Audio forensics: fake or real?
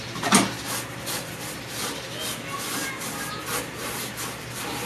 real